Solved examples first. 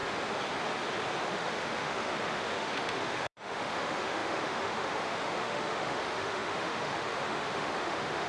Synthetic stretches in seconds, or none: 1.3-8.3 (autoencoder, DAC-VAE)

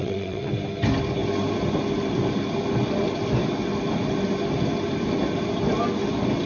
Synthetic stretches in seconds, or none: 0.0-0.5 (vocoder, WaveNeXt)

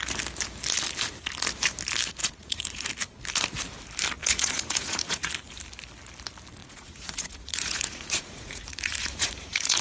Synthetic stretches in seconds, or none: 2.2-2.9 (vocoder, Vocos); 4.2-5.3; 6.6-9.8

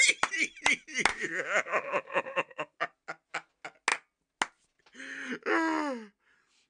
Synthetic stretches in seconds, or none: 1.1-2.8 (autoencoder, DAC-VAE)

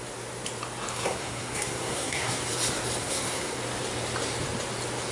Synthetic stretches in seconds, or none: 0.9-2.4 (codec, SNAC); 3.0-3.6